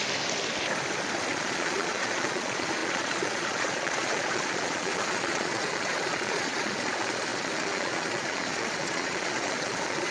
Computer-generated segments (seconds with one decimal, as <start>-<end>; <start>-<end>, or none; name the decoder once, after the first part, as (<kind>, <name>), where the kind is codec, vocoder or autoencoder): 1.3-10.1 (vocoder, Vocos)